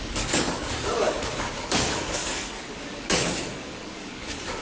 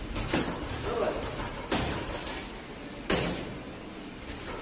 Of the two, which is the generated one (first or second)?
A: first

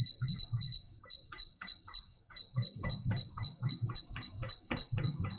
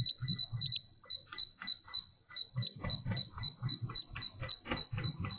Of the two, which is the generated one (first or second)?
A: first